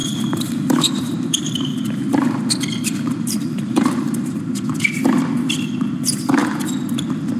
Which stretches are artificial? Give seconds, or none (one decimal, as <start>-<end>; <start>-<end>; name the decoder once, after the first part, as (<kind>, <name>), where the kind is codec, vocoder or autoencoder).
0.0-4.4 (vocoder, BigVGAN v2)